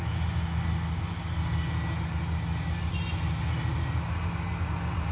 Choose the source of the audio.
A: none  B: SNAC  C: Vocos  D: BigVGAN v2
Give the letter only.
A